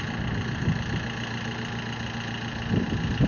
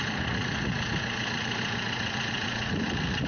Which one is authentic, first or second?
first